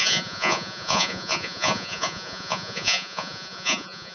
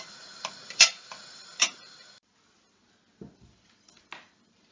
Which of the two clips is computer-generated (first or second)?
first